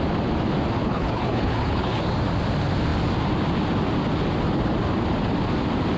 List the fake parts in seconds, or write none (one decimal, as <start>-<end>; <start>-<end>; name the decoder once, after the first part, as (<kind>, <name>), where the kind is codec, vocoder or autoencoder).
0.8-2.0 (codec, HILCodec)